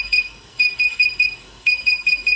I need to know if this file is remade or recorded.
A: remade